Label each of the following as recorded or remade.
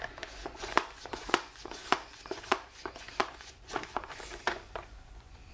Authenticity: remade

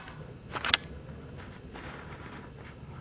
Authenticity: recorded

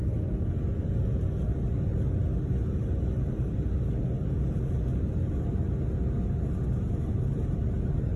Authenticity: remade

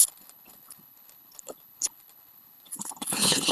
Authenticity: remade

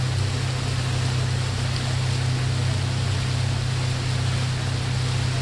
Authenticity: recorded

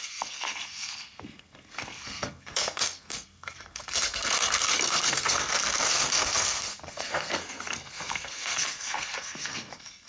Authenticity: remade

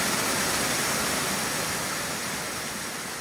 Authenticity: recorded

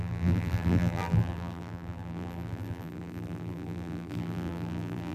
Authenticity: remade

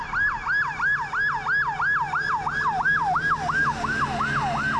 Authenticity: recorded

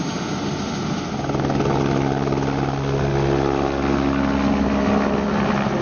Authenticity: recorded